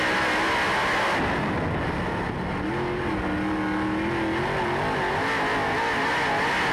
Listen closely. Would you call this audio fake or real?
real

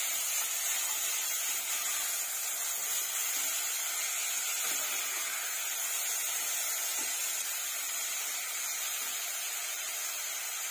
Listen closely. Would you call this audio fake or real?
real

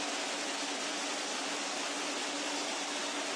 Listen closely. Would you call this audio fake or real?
real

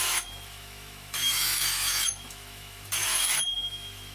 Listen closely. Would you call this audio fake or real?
fake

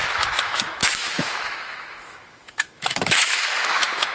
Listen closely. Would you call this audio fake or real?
fake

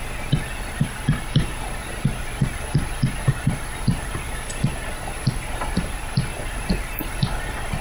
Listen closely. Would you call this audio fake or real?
real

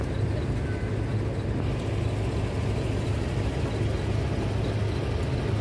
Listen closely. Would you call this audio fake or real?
real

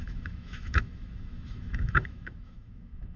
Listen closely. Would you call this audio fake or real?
fake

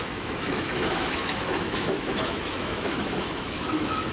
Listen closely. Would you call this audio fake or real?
fake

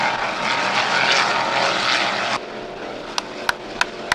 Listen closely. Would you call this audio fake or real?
real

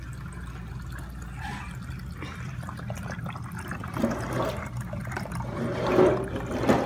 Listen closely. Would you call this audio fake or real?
real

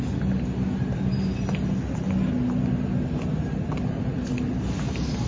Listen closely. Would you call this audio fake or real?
real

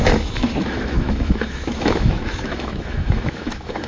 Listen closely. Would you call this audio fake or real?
fake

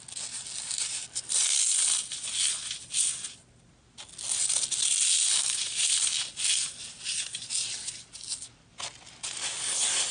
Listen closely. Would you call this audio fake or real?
real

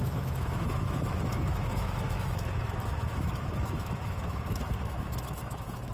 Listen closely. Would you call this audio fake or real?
fake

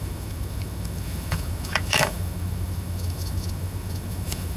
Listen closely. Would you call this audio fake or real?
fake